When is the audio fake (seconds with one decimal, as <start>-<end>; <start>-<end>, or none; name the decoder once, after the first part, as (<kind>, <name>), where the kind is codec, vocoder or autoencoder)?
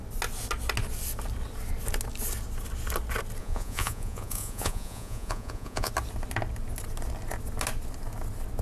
3.4-5.9 (vocoder, Vocos)